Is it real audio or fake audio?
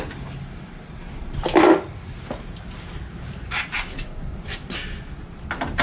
real